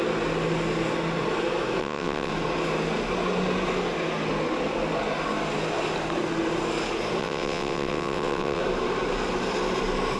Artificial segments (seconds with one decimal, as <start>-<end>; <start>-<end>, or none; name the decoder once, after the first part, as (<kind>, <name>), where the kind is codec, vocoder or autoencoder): 1.8-2.3 (vocoder, WaveNeXt); 7.2-8.6